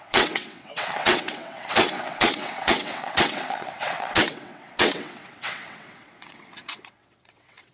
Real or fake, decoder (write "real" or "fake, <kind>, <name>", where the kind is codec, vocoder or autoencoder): fake, vocoder, WaveNeXt